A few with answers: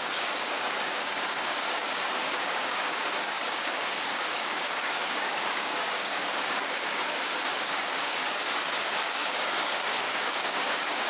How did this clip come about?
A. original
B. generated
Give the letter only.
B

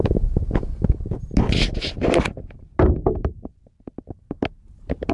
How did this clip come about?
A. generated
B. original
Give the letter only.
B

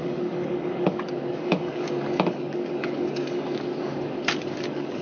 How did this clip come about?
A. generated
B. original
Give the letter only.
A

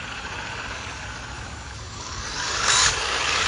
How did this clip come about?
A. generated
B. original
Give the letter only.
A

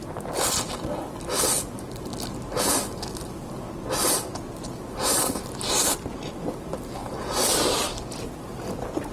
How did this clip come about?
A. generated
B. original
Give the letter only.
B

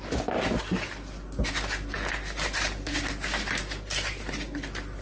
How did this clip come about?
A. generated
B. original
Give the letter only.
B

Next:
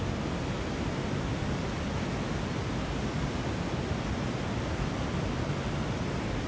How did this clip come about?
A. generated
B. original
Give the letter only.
B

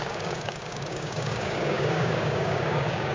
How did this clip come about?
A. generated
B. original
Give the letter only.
A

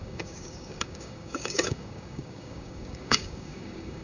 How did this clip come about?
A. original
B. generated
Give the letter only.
B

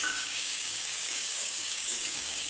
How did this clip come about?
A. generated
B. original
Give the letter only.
A